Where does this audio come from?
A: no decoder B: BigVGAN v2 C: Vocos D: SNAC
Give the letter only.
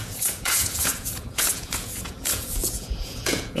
C